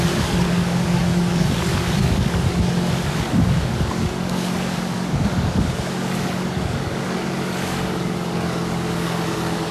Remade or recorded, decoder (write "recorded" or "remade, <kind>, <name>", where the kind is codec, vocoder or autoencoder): remade, codec, DAC